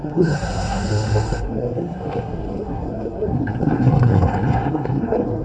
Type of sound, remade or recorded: remade